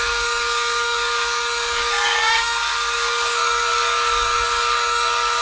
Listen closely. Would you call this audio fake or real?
fake